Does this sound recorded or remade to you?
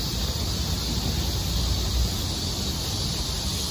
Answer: recorded